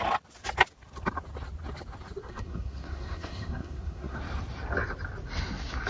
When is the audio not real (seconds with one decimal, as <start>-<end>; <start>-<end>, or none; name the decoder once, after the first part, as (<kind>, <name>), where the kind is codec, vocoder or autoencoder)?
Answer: 2.2-4.2 (codec, SNAC)

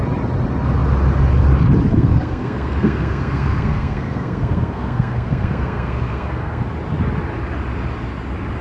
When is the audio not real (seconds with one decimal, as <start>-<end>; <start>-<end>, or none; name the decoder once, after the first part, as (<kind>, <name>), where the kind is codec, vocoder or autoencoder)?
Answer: 1.9-6.7 (codec, SNAC)

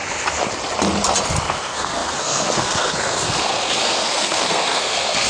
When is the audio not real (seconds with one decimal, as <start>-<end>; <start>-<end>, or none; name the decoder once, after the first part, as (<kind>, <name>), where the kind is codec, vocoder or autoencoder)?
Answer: 1.4-5.3 (codec, SNAC)

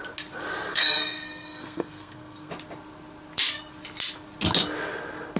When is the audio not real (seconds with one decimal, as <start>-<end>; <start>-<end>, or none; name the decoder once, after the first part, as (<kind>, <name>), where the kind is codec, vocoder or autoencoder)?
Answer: 0.7-2.5 (codec, SNAC)

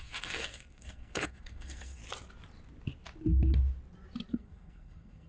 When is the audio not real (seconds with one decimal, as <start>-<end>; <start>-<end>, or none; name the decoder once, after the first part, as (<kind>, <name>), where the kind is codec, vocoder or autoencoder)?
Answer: 0.0-2.0 (codec, SNAC); 4.3-5.3

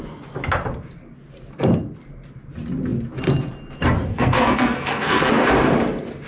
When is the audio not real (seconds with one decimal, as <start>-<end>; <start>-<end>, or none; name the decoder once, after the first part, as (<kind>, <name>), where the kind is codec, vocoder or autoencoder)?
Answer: 4.1-5.3 (codec, SNAC)